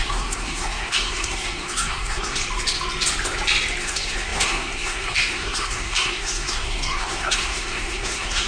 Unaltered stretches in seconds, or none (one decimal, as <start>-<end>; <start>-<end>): 2.4-3.8